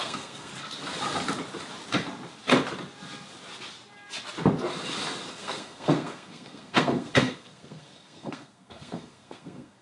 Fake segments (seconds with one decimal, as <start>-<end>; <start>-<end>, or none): 0.0-0.5; 5.3-9.8